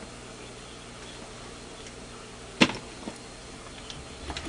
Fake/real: real